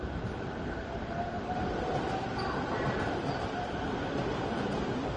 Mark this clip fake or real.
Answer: fake